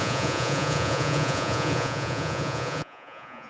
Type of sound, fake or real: fake